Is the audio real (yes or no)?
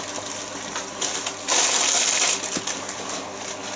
yes